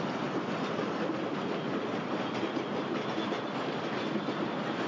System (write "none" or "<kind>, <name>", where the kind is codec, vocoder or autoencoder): none